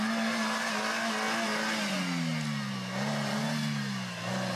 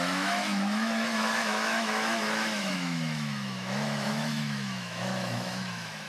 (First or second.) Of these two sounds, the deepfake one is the second